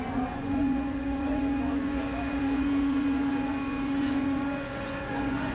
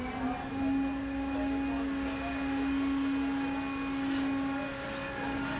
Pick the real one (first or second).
second